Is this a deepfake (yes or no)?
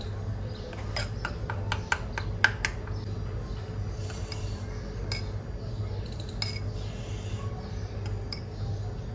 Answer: no